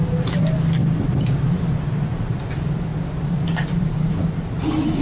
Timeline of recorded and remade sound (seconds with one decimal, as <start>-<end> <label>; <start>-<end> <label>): 0.0-5.0 recorded